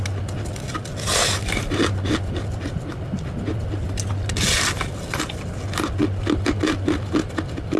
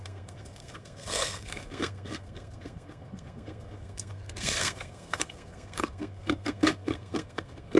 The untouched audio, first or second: first